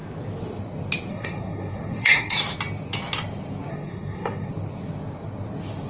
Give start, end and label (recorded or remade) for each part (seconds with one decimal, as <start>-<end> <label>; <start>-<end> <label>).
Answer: 0.0-1.1 recorded; 1.1-2.3 remade; 2.3-3.7 recorded; 3.7-4.5 remade; 4.5-5.9 recorded